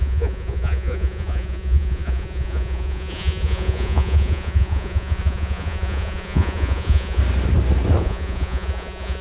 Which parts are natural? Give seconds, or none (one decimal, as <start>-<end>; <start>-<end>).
7.2-8.0